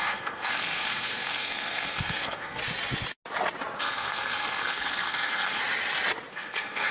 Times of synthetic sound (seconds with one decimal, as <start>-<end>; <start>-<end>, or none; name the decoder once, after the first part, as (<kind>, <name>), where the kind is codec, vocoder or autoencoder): 0.0-2.6 (codec, SNAC); 3.8-5.6; 6.3-6.9